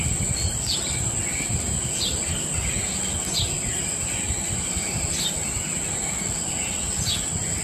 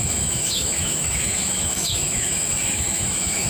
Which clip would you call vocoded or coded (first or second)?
second